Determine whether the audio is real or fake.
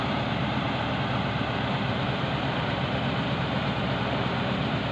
fake